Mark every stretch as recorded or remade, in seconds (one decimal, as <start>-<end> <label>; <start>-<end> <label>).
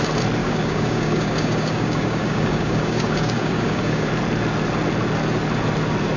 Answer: 0.0-0.4 recorded; 0.4-4.1 remade; 4.1-6.2 recorded